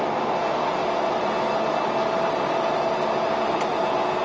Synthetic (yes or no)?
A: no